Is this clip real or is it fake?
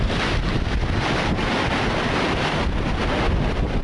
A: real